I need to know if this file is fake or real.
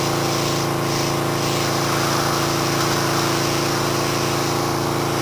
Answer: real